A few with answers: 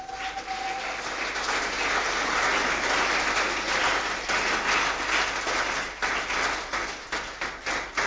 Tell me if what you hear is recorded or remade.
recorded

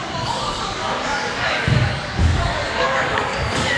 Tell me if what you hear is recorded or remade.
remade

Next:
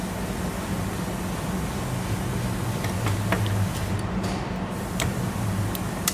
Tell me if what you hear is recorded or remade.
recorded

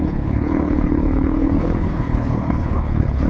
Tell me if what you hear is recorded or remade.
remade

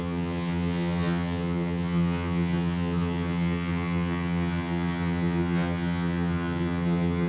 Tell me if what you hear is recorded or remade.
remade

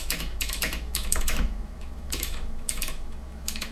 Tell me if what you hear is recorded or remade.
remade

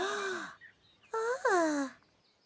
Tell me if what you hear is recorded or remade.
recorded